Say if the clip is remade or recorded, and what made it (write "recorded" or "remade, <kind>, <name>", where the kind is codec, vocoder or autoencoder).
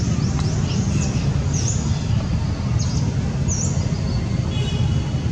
recorded